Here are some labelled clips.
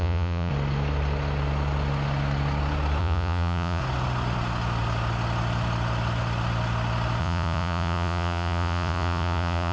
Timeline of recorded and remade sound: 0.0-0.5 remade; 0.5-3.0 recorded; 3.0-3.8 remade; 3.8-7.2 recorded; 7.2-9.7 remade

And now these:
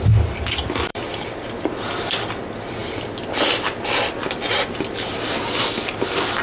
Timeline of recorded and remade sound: 0.0-0.9 recorded; 0.9-2.3 remade; 2.3-2.8 recorded; 2.8-5.6 remade; 5.6-6.4 recorded

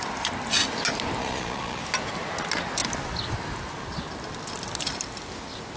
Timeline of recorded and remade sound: 0.0-1.2 recorded; 1.2-1.8 remade; 1.8-5.8 recorded